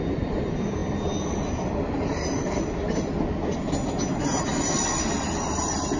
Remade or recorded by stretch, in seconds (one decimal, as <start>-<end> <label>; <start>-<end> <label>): 0.0-6.0 recorded